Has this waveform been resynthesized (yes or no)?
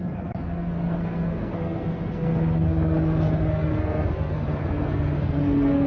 yes